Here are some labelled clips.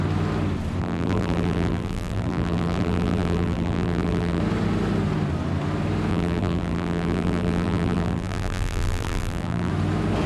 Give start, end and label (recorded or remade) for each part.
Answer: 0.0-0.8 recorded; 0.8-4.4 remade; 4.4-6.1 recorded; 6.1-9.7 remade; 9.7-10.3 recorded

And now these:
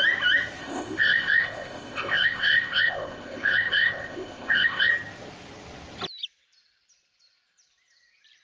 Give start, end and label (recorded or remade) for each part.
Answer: 0.0-0.6 recorded; 0.6-4.9 remade; 4.9-8.4 recorded